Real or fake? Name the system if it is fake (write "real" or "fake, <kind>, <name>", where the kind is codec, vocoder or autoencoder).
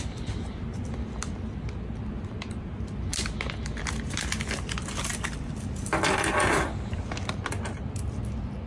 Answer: fake, vocoder, BigVGAN v2